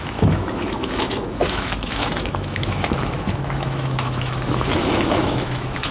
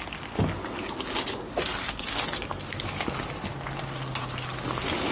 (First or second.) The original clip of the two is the second